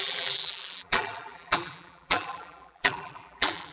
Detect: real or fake fake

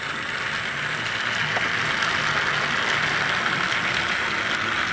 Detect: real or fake real